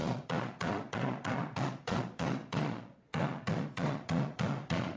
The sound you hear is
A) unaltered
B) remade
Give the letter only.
B